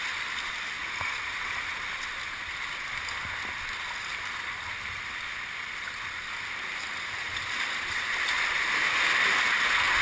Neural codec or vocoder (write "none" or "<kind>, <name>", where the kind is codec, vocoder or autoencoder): none